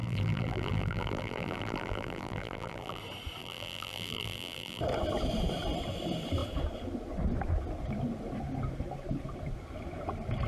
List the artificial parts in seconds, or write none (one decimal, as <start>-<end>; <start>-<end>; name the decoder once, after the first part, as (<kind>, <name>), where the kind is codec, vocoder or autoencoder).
0.0-3.0 (vocoder, BigVGAN v2); 3.4-4.8